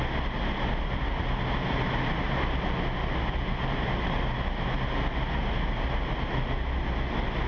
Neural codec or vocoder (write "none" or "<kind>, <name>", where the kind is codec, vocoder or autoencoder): none